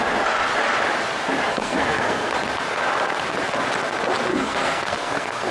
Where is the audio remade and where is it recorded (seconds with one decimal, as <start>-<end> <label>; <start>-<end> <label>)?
0.0-1.5 recorded; 1.5-2.3 remade; 2.3-4.3 recorded; 4.3-5.5 remade